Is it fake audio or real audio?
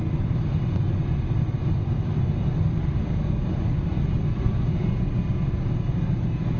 real